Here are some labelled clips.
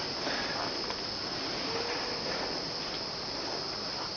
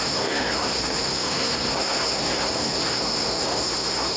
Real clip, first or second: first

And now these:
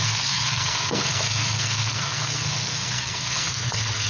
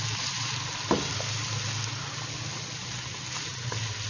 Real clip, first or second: second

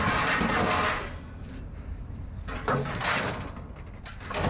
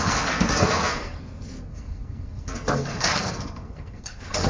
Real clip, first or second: first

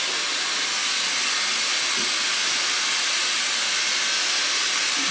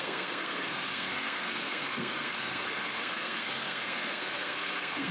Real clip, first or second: first